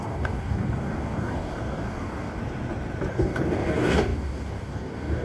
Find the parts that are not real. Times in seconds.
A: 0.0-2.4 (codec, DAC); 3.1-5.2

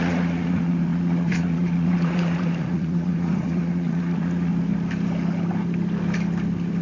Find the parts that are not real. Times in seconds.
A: 0.0-4.5 (vocoder, Vocos)

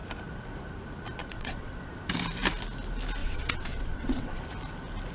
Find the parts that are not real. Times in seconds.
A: 1.2-1.9 (vocoder, WaveNeXt); 3.2-4.4

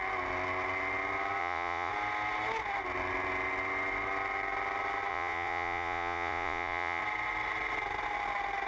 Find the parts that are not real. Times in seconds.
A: 1.4-1.9 (vocoder, Vocos); 5.1-7.0